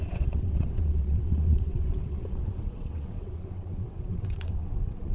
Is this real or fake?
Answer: fake